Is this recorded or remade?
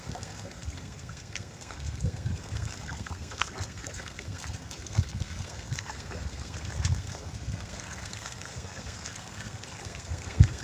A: remade